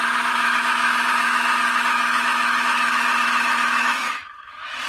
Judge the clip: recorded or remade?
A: remade